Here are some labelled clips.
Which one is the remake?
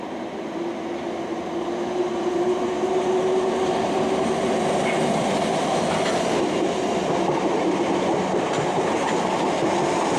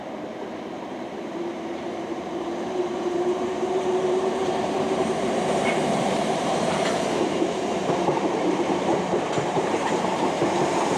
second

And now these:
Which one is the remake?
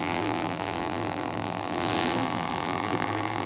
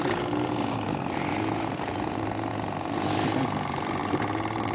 first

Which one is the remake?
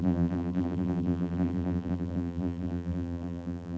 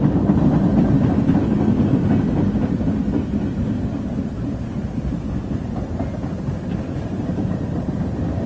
first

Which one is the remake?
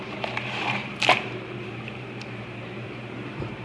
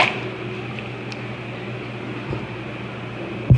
first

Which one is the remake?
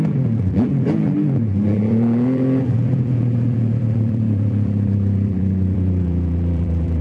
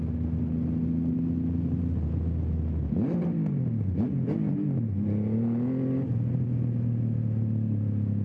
first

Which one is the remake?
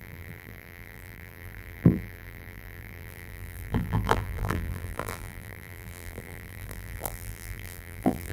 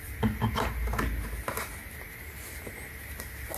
first